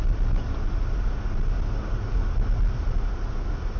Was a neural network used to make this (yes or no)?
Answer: no